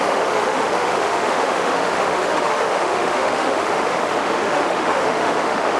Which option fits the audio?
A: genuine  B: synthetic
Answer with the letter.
B